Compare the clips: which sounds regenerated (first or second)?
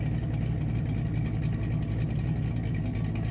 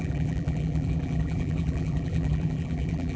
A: second